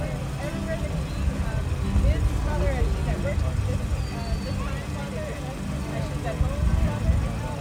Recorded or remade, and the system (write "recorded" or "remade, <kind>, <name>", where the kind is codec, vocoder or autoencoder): recorded